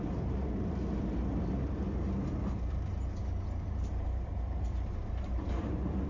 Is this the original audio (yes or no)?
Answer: no